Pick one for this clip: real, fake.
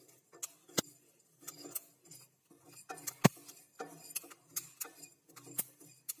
real